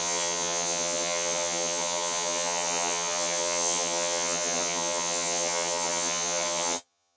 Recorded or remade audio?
remade